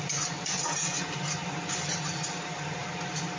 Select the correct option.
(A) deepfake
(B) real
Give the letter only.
A